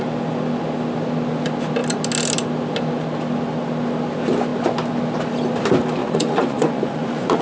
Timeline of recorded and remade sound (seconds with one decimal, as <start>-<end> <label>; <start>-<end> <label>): 0.0-6.0 recorded; 6.0-7.4 remade